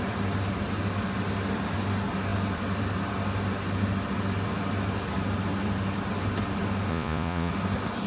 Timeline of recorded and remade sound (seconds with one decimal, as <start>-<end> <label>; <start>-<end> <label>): 0.0-6.9 recorded; 6.9-7.5 remade; 7.5-8.1 recorded